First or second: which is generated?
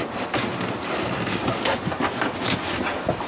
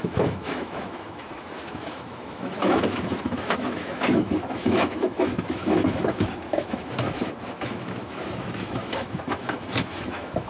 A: second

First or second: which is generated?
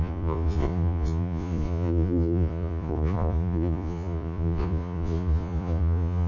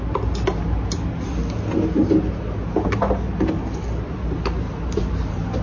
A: first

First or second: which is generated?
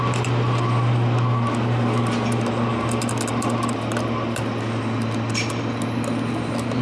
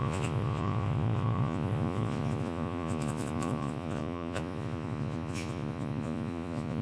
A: second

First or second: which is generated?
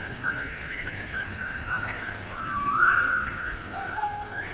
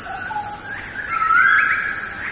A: first